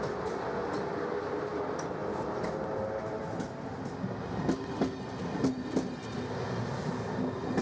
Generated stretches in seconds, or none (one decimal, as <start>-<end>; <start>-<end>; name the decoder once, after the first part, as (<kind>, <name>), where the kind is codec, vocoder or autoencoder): none